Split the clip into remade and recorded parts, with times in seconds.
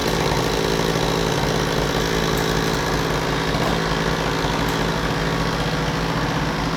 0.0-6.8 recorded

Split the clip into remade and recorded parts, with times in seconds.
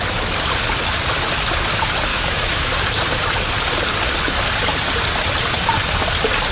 0.0-2.1 recorded; 2.1-2.8 remade; 2.8-6.5 recorded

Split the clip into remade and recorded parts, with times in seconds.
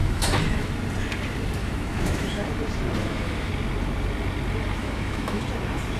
0.0-0.7 remade; 0.7-1.6 recorded; 1.6-2.5 remade; 2.5-3.0 recorded; 3.0-3.5 remade; 3.5-4.8 recorded; 4.8-5.4 remade; 5.4-6.0 recorded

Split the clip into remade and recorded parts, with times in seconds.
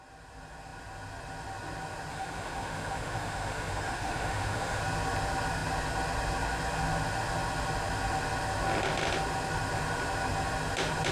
0.0-2.1 recorded; 2.1-4.8 remade; 4.8-11.1 recorded